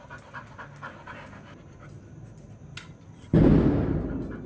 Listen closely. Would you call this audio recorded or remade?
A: recorded